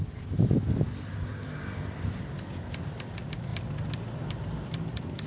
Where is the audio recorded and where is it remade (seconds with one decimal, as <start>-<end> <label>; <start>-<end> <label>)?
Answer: 0.0-1.3 recorded; 1.3-2.3 remade; 2.3-5.3 recorded